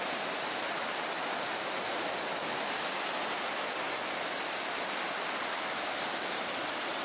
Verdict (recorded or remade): recorded